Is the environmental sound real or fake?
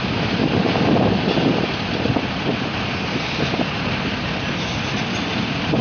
real